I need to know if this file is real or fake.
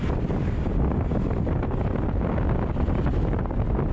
real